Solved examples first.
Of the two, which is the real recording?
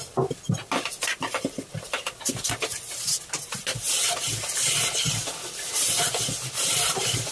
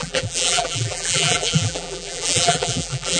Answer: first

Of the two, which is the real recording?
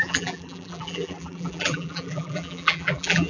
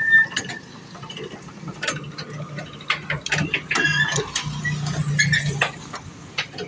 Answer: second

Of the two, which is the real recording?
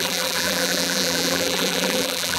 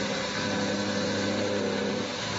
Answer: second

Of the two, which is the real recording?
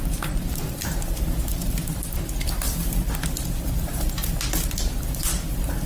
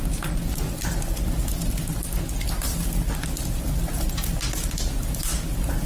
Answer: second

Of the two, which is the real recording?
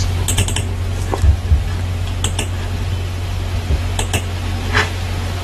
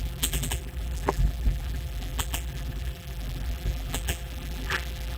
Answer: first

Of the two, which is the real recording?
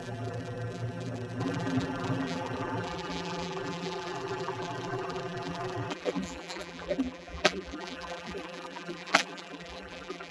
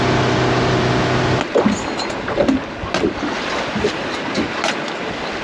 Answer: second